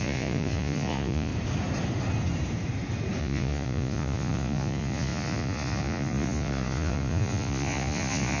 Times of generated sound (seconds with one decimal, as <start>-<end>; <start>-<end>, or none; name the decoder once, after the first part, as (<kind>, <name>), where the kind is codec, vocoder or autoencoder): 0.0-1.3 (vocoder, Vocos); 3.2-8.4